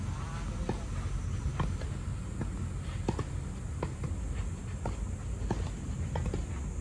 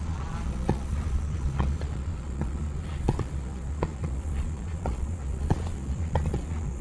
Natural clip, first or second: first